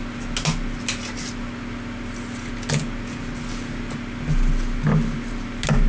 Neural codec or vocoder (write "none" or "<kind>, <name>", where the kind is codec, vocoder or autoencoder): none